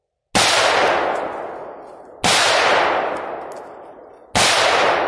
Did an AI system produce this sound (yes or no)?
no